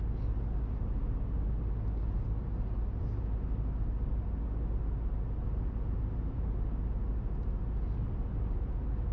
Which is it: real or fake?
real